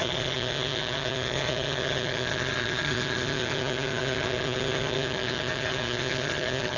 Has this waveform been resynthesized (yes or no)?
yes